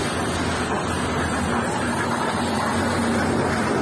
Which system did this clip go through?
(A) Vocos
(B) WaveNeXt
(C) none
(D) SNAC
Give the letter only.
C